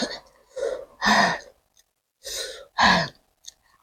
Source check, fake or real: real